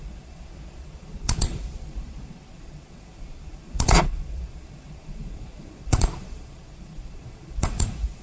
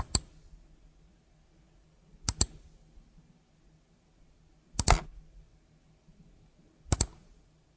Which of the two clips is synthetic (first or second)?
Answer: first